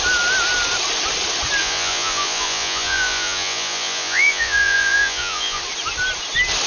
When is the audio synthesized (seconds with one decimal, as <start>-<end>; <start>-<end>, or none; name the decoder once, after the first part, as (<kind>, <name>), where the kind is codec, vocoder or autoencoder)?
1.6-5.6 (vocoder, Vocos)